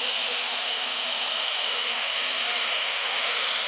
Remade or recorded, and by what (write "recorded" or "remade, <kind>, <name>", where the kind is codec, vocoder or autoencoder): remade, autoencoder, DAC-VAE